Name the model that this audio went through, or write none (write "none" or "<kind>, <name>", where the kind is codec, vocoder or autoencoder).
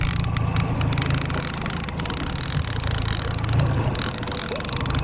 none